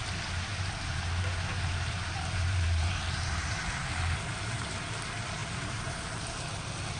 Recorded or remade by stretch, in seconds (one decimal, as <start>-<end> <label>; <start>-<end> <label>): 0.0-0.5 recorded; 0.5-4.7 remade; 4.7-5.4 recorded; 5.4-6.4 remade; 6.4-7.0 recorded